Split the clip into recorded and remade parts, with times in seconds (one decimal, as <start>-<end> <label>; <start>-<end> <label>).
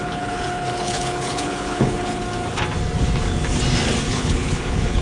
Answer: 0.0-2.2 remade; 2.2-4.1 recorded; 4.1-5.0 remade